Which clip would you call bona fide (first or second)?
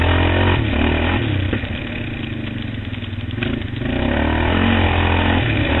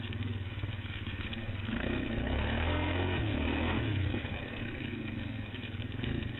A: first